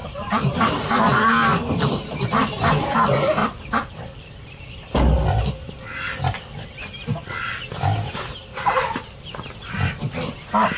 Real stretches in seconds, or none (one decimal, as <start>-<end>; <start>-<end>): 0.7-1.5; 2.7-3.4; 4.6-8.5; 9.7-10.8